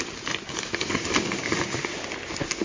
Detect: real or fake real